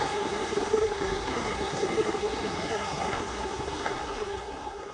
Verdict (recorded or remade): remade